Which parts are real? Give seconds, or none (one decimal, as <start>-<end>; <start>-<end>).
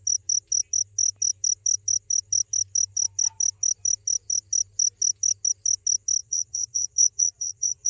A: 0.0-6.2